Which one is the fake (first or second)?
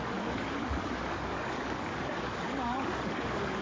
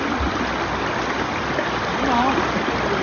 first